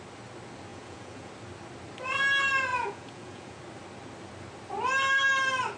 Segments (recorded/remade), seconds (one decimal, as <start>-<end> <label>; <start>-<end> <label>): 0.0-0.7 recorded; 0.7-1.3 remade; 1.3-2.7 recorded; 2.7-3.6 remade; 3.6-5.8 recorded

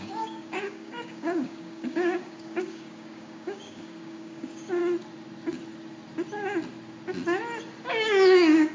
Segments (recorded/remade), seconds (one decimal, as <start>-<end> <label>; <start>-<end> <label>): 0.0-4.8 remade; 4.8-7.9 recorded; 7.9-8.7 remade

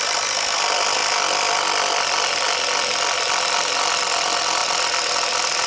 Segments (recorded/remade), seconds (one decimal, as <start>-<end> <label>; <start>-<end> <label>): 0.0-1.0 remade; 1.0-4.0 recorded; 4.0-4.6 remade; 4.6-5.3 recorded; 5.3-5.7 remade

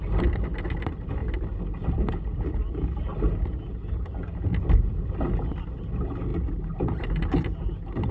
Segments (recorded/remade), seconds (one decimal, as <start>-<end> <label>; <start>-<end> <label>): 0.0-8.1 recorded